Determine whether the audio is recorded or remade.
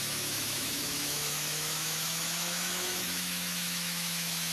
remade